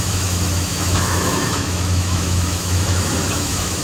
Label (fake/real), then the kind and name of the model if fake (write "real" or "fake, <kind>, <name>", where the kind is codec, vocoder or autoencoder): fake, autoencoder, DAC-VAE